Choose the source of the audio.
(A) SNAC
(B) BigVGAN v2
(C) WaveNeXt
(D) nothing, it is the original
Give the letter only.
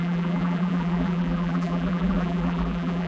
B